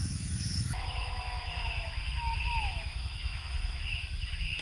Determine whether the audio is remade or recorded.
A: remade